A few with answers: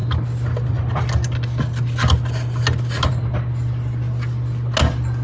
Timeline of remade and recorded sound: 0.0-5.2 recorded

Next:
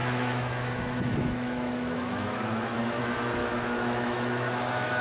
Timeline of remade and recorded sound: 0.0-3.0 remade; 3.0-3.4 recorded; 3.4-5.0 remade

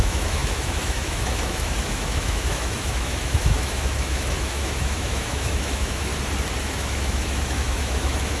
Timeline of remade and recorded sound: 0.0-6.1 remade; 6.1-6.6 recorded; 6.6-8.4 remade

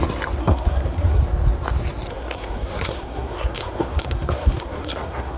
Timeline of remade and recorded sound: 0.0-0.4 recorded; 0.4-1.2 remade; 1.2-2.1 recorded; 2.1-5.4 remade

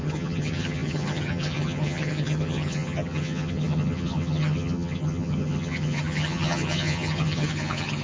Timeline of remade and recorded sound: 0.0-8.0 remade

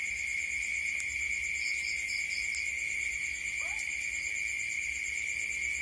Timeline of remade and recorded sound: 0.0-5.8 recorded

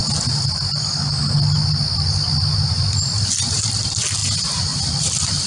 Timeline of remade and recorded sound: 0.0-5.5 recorded

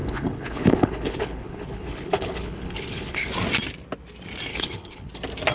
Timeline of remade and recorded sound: 0.0-3.3 remade; 3.3-4.5 recorded; 4.5-5.1 remade; 5.1-5.5 recorded